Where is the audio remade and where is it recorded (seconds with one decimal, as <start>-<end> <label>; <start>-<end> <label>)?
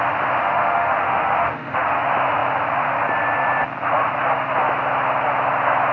0.0-0.4 recorded; 0.4-2.0 remade; 2.0-5.9 recorded